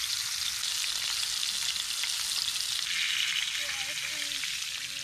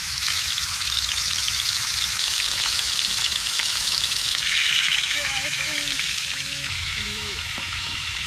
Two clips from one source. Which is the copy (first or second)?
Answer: second